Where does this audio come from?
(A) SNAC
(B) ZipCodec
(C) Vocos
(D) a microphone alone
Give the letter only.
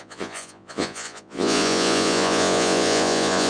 C